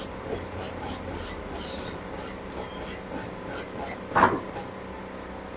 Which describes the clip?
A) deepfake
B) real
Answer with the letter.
B